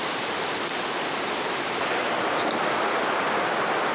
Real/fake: real